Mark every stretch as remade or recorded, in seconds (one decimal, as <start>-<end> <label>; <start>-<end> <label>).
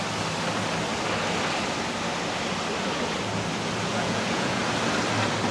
0.0-3.9 recorded; 3.9-4.6 remade; 4.6-5.5 recorded